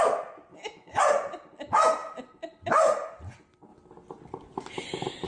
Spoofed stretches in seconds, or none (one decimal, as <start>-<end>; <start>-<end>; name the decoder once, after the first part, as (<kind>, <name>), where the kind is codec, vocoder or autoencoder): 0.5-1.0 (autoencoder, DAC-VAE)